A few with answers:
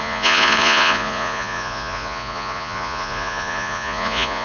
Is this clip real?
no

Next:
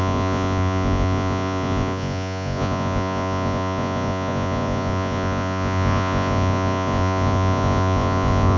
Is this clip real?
no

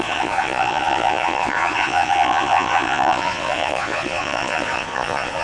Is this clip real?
no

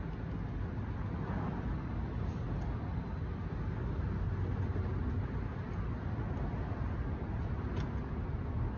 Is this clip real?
yes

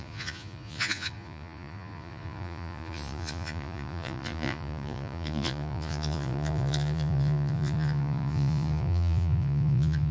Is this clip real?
no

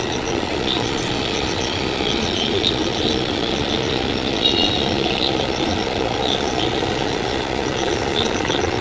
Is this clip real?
no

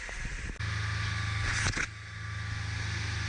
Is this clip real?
yes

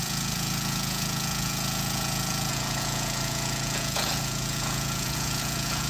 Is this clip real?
no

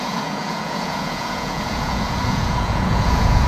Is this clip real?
no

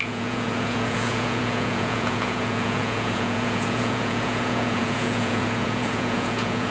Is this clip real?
no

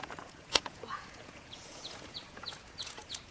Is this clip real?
no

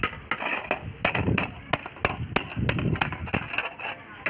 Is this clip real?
yes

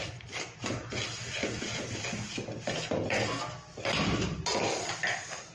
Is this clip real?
yes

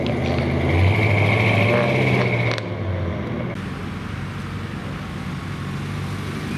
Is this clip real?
yes